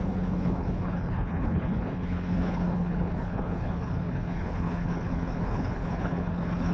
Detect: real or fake fake